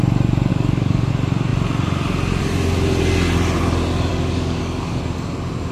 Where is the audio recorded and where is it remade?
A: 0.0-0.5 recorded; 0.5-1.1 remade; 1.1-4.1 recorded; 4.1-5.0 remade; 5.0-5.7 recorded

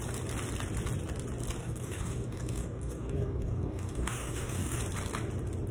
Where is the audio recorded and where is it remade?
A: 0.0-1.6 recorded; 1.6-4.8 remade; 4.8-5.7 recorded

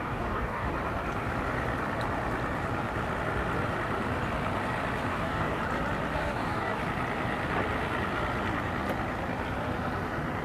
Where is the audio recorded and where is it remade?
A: 0.0-0.7 remade; 0.7-5.1 recorded; 5.1-5.6 remade; 5.6-6.2 recorded; 6.2-6.8 remade; 6.8-10.4 recorded

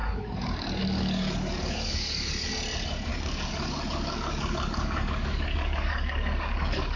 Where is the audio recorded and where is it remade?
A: 0.0-2.5 remade; 2.5-3.1 recorded; 3.1-7.0 remade